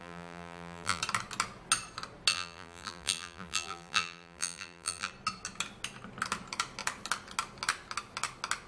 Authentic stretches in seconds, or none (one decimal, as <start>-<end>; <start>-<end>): 1.0-2.3; 5.1-8.7